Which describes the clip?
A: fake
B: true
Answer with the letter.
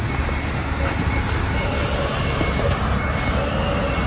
B